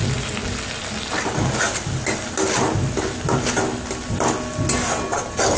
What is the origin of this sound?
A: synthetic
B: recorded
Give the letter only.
B